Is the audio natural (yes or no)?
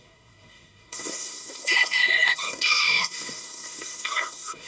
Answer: no